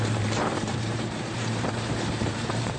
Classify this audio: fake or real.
fake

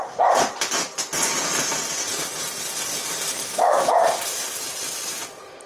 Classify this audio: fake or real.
fake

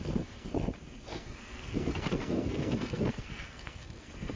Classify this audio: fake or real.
fake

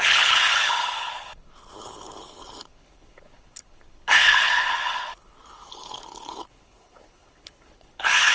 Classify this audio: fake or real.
fake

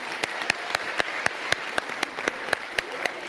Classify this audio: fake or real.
fake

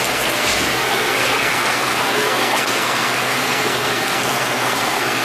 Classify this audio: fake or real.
fake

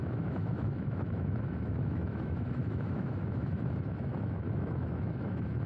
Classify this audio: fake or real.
fake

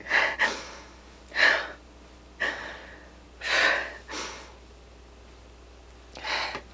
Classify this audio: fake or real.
real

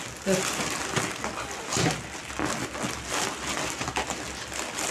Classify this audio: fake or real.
real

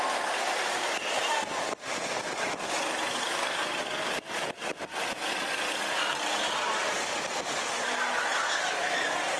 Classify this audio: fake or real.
real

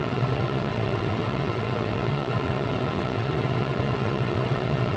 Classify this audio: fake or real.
fake